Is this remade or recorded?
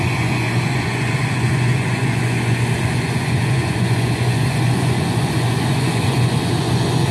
remade